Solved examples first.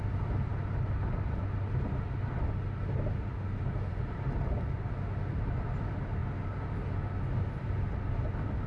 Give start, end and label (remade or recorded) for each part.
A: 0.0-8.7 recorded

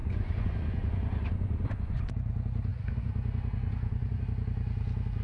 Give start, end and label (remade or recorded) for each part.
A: 0.0-2.1 remade; 2.1-2.7 recorded; 2.7-4.2 remade; 4.2-5.2 recorded

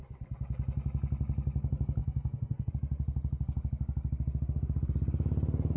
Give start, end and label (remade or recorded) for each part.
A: 0.0-2.0 recorded; 2.0-2.7 remade; 2.7-5.8 recorded